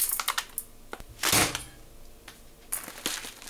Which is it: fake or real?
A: real